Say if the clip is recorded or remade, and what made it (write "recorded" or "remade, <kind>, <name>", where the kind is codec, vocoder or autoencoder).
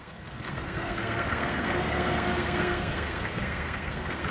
remade, codec, SNAC